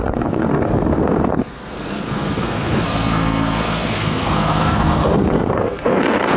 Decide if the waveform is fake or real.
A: fake